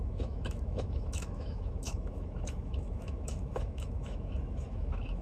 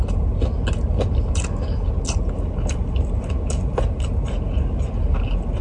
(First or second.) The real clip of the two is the second